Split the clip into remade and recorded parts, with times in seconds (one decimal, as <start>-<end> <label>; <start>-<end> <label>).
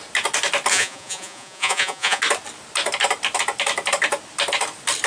0.0-0.7 recorded; 0.7-2.2 remade; 2.2-5.1 recorded